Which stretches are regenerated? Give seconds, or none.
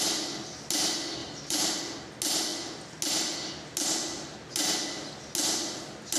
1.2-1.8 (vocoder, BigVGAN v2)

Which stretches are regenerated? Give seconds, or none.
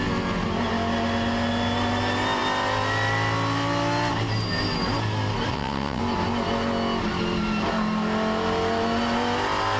5.5-6.0 (vocoder, WaveNeXt)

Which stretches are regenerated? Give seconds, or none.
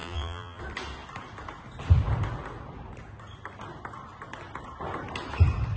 0.0-0.6 (vocoder, BigVGAN v2)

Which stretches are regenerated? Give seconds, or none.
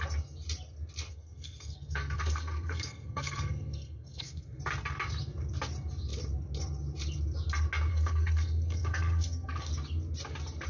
1.1-4.6 (codec, SNAC); 7.9-9.7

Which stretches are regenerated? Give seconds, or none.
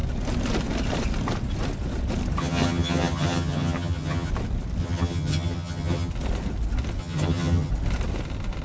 2.4-4.3 (vocoder, HiFi-GAN); 4.8-6.1; 7.0-7.7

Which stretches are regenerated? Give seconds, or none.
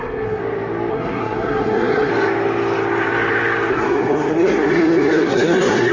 0.0-0.4 (codec, SNAC); 0.9-2.1; 3.7-5.9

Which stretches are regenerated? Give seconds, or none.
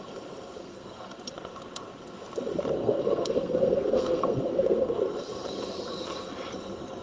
0.6-1.2 (codec, SNAC); 2.8-5.0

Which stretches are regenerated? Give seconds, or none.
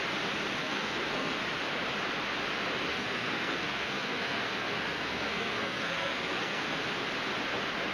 0.6-1.4 (codec, SNAC); 2.9-6.8